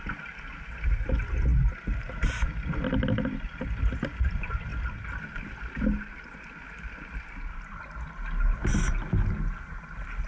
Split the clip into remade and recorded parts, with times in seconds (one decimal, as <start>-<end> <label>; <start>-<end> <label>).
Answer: 0.0-10.3 recorded

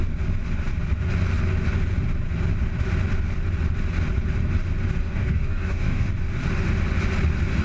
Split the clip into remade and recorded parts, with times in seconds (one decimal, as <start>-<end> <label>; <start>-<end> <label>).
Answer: 0.0-5.0 recorded; 5.0-6.1 remade; 6.1-7.6 recorded

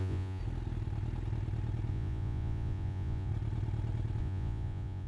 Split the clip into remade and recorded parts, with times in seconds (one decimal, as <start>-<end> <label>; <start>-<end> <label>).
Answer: 0.0-0.4 remade; 0.4-1.9 recorded; 1.9-3.3 remade; 3.3-4.2 recorded; 4.2-5.1 remade

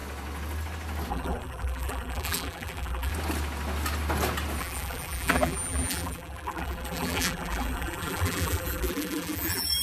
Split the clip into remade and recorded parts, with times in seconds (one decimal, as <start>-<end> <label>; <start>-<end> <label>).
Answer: 0.0-1.1 recorded; 1.1-3.1 remade; 3.1-4.6 recorded; 4.6-9.8 remade

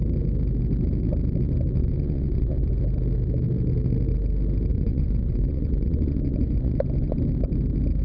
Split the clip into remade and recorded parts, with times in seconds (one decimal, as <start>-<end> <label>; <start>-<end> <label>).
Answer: 0.0-1.8 recorded; 1.8-2.7 remade; 2.7-4.7 recorded; 4.7-7.2 remade; 7.2-8.0 recorded

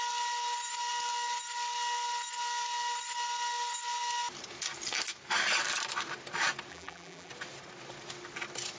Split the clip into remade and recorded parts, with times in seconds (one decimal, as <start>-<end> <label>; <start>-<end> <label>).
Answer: 0.0-6.7 recorded; 6.7-7.3 remade; 7.3-8.8 recorded